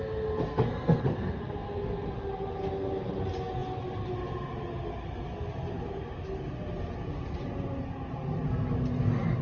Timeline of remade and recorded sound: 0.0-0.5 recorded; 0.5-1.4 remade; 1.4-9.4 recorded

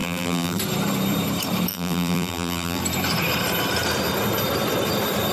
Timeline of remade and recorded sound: 0.0-0.6 remade; 0.6-1.7 recorded; 1.7-2.8 remade; 2.8-5.3 recorded